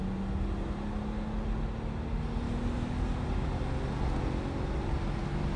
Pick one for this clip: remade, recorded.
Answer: recorded